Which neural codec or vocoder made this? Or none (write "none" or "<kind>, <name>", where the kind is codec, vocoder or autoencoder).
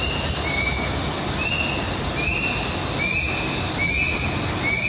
none